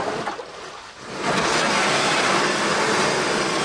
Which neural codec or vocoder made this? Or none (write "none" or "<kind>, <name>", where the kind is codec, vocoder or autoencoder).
none